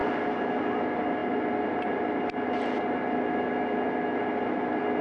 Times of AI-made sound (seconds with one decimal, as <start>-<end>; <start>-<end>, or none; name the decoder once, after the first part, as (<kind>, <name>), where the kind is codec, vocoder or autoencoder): none